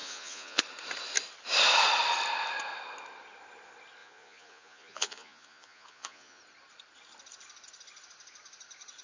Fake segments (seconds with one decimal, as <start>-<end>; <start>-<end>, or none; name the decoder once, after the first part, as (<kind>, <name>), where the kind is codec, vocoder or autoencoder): 0.0-0.6 (vocoder, Vocos); 4.0-6.4